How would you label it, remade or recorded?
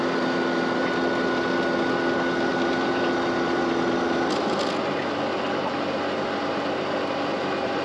recorded